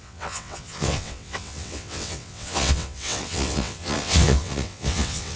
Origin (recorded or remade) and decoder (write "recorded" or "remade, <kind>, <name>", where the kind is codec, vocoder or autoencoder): remade, vocoder, WaveNeXt